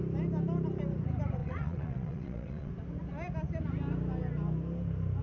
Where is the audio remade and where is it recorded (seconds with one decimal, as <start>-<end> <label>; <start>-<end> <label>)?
0.0-1.4 recorded; 1.4-2.7 remade; 2.7-5.2 recorded